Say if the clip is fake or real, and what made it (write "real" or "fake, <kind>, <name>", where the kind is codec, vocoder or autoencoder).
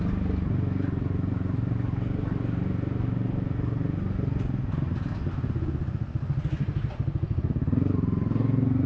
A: real